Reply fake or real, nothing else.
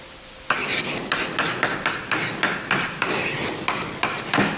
real